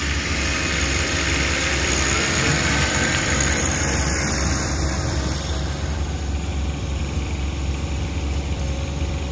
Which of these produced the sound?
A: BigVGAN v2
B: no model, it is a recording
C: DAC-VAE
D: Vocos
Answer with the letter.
A